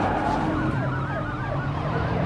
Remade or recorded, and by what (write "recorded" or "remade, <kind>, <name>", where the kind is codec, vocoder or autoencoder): remade, vocoder, BigVGAN v2